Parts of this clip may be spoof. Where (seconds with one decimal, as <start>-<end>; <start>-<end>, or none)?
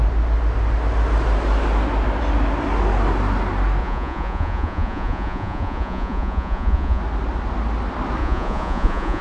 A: 3.8-7.0; 8.2-9.2